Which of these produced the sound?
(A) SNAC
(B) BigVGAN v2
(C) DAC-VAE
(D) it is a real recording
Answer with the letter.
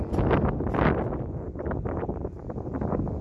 D